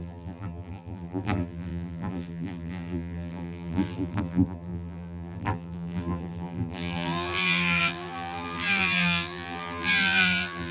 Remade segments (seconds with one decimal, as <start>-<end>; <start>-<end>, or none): 0.0-10.7